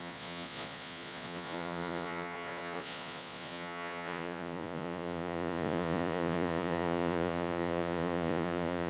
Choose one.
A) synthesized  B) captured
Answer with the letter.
A